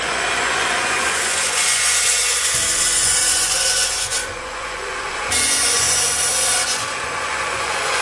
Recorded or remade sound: remade